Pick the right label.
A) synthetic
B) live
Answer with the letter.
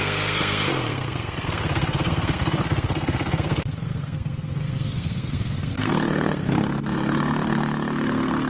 A